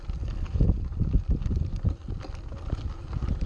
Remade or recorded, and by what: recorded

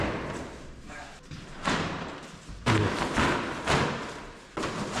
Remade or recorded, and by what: recorded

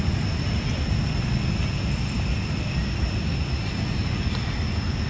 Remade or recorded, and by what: recorded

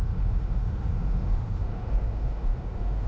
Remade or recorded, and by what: remade, autoencoder, DAC-VAE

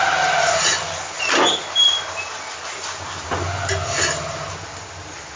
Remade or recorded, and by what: recorded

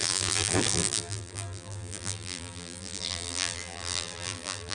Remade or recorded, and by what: remade, vocoder, BigVGAN v2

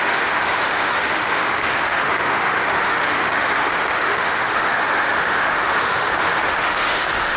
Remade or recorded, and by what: remade, autoencoder, DAC-VAE